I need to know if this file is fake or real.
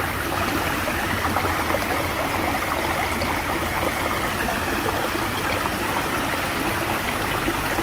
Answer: real